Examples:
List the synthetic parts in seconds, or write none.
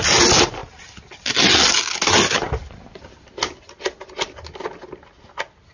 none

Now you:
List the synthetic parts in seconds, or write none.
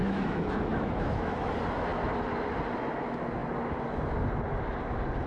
0.0-1.5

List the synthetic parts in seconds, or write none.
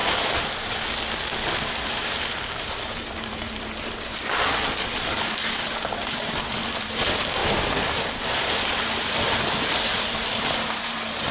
1.6-4.3; 4.9-10.3; 10.8-11.3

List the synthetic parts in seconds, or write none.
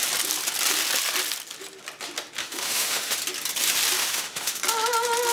2.4-3.1; 4.0-4.6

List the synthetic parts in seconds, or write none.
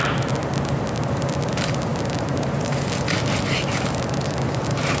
1.9-5.0